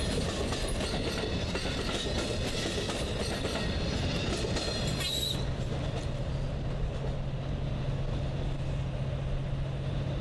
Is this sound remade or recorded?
recorded